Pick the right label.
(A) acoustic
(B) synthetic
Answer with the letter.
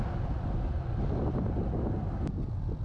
A